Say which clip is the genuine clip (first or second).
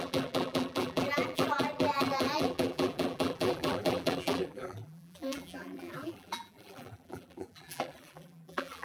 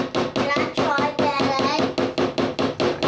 second